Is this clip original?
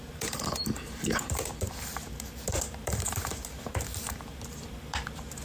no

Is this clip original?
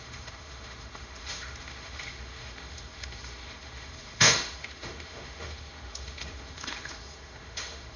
no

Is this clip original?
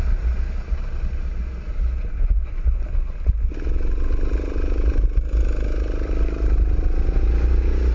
yes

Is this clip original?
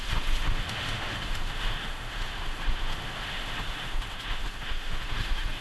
no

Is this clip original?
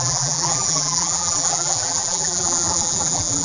no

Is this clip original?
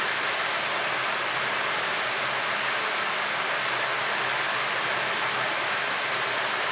yes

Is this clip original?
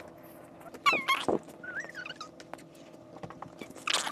yes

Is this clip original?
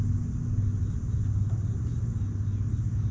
yes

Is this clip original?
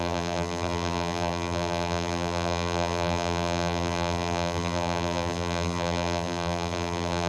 no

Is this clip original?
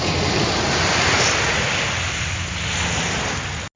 yes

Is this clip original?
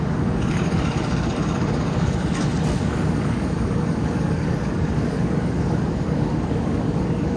no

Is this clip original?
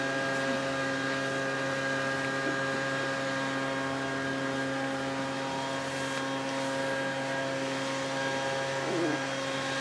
yes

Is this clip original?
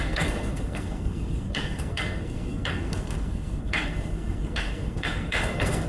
no